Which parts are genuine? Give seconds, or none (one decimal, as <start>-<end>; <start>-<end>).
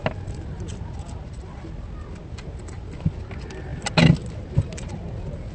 0.0-5.5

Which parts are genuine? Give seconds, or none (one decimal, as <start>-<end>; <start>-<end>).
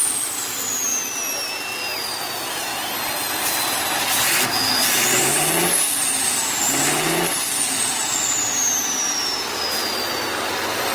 0.0-10.9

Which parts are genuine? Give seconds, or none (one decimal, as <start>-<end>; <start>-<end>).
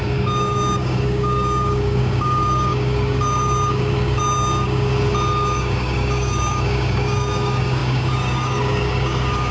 4.9-5.6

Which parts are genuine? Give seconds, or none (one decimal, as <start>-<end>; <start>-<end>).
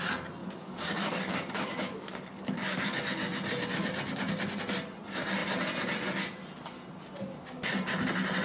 0.0-0.4; 3.0-8.4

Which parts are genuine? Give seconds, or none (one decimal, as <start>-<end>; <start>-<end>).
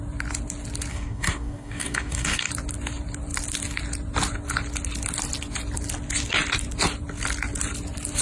0.0-0.9; 2.5-8.2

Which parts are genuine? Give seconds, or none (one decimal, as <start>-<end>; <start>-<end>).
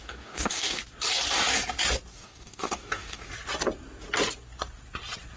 0.8-2.1; 3.3-5.4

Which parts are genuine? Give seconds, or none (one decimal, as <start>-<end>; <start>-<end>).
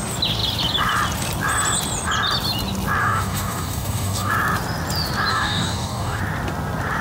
0.0-3.0; 4.3-5.3; 6.2-7.0